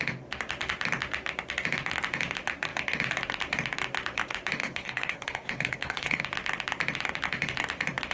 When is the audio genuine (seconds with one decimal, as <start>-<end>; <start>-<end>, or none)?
0.0-4.6; 6.2-8.1